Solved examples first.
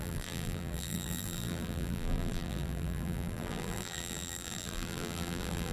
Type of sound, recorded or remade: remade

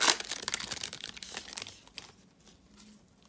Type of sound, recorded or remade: recorded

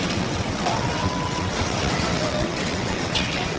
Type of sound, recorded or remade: remade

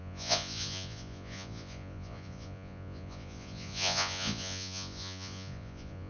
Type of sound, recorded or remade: remade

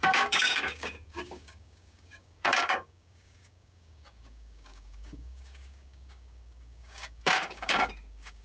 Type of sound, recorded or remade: remade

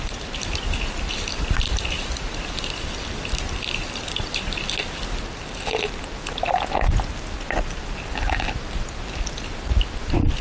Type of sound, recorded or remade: recorded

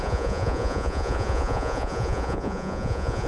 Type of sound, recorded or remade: remade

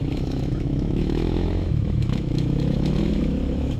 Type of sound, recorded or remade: remade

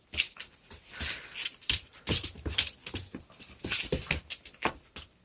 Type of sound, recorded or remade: remade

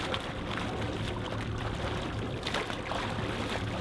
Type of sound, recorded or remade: recorded